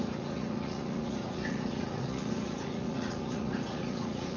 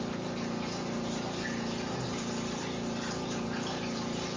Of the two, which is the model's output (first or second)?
first